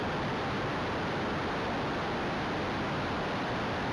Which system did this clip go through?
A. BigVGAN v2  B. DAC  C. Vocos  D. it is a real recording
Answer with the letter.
D